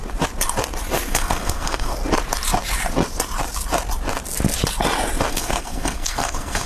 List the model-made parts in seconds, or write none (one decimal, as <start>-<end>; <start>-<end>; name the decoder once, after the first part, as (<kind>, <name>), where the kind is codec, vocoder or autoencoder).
1.1-1.9 (codec, SNAC); 5.3-6.7